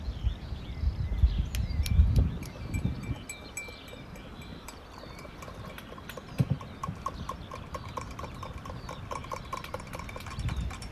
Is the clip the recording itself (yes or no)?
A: yes